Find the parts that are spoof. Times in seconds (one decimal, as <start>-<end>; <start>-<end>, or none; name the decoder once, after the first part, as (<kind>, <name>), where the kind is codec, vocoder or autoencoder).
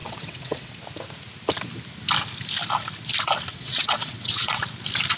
0.0-0.7 (vocoder, WaveNeXt); 3.5-4.6